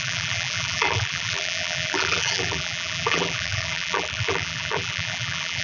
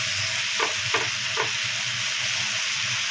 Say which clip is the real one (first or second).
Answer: second